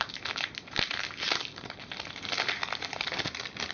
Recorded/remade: recorded